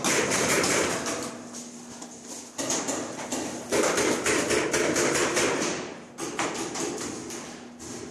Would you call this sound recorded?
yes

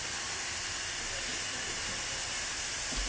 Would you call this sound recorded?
yes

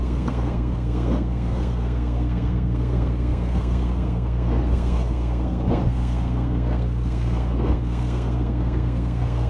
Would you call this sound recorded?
no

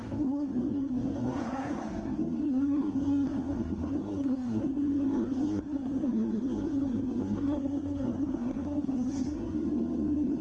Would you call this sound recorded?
no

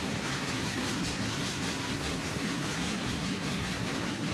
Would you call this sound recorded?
no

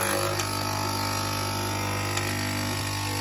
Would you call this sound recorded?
yes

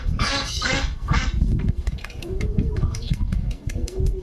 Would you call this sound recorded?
no